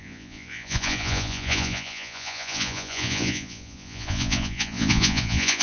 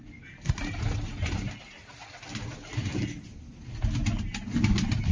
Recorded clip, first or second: second